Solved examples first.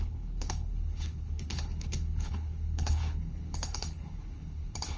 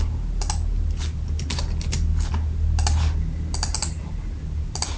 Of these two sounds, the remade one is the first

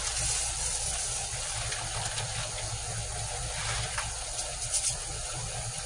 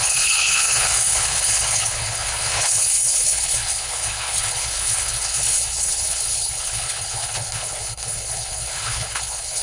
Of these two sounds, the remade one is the second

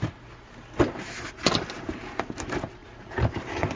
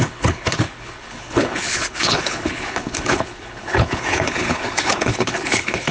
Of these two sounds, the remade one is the second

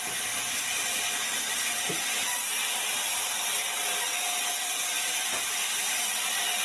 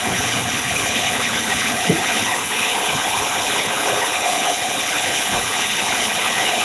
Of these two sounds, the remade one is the second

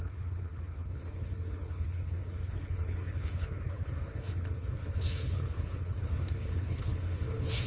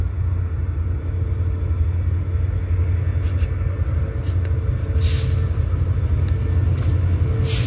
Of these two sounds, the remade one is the first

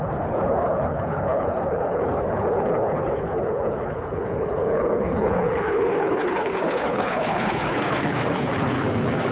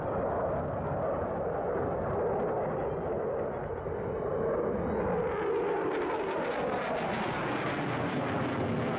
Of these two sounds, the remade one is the first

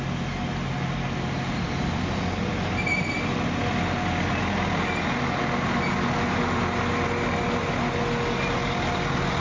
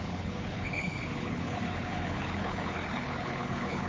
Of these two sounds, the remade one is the second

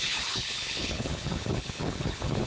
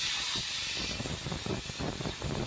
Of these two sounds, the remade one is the first